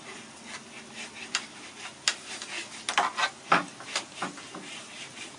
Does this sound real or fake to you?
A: real